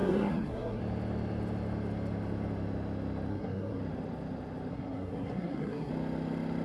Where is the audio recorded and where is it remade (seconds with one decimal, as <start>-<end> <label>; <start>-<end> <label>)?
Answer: 0.0-0.8 remade; 0.8-3.3 recorded; 3.3-3.8 remade; 3.8-4.7 recorded; 4.7-5.9 remade; 5.9-6.6 recorded